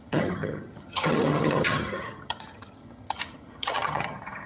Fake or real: fake